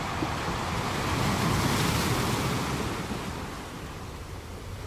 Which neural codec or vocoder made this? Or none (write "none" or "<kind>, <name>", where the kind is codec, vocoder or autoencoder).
none